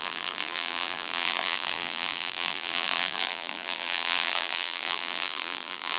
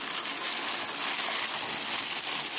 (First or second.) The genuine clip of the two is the second